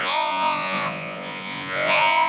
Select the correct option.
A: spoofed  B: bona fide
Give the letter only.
A